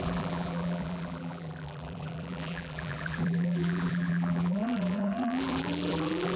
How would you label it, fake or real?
fake